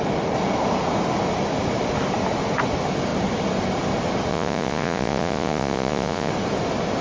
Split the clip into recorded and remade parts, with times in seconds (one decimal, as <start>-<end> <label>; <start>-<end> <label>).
0.0-4.3 recorded; 4.3-6.3 remade; 6.3-7.0 recorded

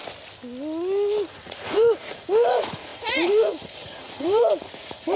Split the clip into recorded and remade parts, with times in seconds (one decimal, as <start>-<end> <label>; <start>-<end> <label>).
0.0-1.3 recorded; 1.3-5.2 remade

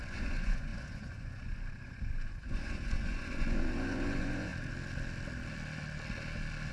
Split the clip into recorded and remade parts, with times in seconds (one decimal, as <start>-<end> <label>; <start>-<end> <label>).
0.0-4.5 remade; 4.5-6.7 recorded

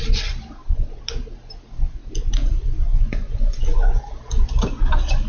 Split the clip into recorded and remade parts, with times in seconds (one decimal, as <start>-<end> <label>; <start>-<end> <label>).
0.0-2.9 recorded; 2.9-3.9 remade; 3.9-5.3 recorded

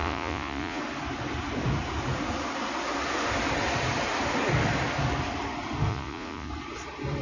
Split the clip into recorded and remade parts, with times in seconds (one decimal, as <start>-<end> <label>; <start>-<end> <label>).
0.0-0.8 remade; 0.8-5.9 recorded; 5.9-6.5 remade; 6.5-7.2 recorded

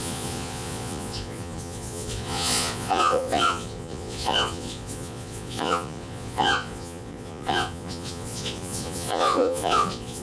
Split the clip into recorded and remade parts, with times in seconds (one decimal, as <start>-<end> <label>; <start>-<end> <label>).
0.0-10.2 remade